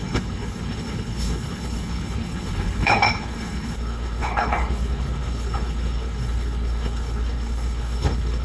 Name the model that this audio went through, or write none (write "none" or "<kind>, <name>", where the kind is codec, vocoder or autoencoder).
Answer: codec, HILCodec